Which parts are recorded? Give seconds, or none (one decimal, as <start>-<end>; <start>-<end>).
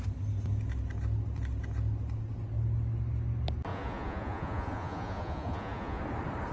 0.0-3.7; 6.0-6.5